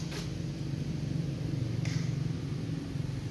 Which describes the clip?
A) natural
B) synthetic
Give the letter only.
A